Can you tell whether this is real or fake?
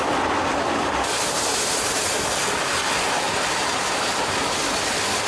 real